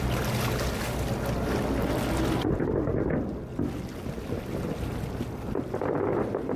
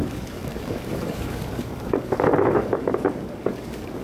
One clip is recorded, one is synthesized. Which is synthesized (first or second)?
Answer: second